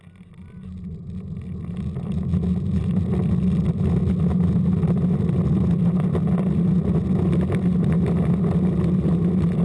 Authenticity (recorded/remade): recorded